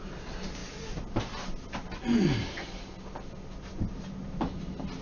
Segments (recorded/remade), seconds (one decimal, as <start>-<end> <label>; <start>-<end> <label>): 0.0-5.0 recorded